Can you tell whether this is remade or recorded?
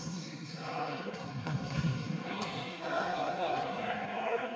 remade